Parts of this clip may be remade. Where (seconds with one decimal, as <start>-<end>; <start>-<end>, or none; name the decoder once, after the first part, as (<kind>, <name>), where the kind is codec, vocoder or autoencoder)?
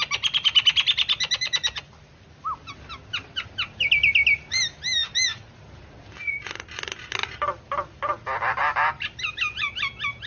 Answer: 5.0-5.5 (vocoder, BigVGAN v2)